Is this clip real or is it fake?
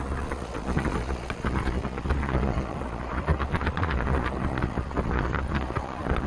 fake